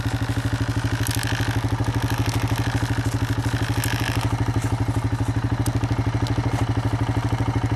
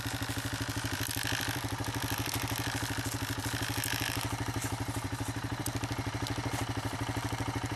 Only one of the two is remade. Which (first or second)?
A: second